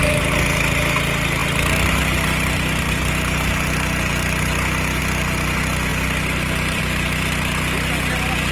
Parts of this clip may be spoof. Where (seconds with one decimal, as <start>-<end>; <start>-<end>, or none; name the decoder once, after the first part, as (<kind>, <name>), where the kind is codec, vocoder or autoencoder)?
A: 1.4-5.0 (vocoder, BigVGAN v2); 5.9-6.8

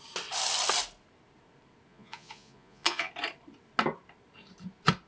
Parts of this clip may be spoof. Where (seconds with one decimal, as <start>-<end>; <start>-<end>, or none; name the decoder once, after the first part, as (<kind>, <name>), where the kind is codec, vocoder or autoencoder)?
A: 1.9-3.1 (vocoder, Vocos)

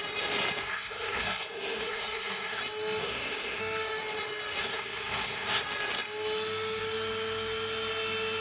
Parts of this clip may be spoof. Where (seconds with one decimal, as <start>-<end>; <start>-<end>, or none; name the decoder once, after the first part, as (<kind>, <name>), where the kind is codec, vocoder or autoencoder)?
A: 0.6-2.6 (codec, SNAC); 3.0-3.6; 4.6-5.6

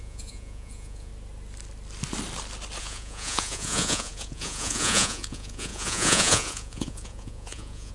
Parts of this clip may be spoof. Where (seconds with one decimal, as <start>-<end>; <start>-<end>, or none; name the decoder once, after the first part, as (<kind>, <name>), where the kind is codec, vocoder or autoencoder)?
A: 0.0-1.1 (vocoder, Vocos); 2.8-7.9